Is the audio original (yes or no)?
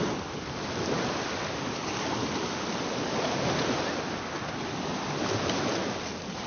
yes